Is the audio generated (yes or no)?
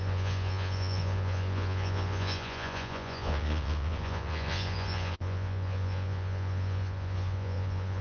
yes